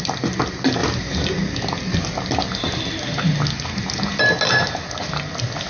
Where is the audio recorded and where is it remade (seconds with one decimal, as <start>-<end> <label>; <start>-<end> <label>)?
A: 0.0-5.7 recorded